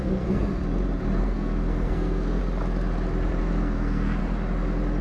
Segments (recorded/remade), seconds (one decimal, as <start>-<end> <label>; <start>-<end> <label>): 0.0-0.5 remade; 0.5-1.2 recorded; 1.2-2.4 remade; 2.4-3.4 recorded; 3.4-4.2 remade; 4.2-5.0 recorded